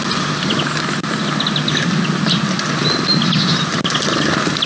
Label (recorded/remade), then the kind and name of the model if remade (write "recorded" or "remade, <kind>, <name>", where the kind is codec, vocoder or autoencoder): recorded